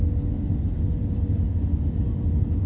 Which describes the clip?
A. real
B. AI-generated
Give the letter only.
A